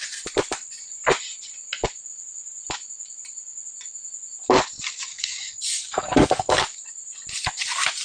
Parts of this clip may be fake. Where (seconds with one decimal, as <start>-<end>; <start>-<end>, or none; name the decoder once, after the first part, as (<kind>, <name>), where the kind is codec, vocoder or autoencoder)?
5.1-6.6 (codec, DAC)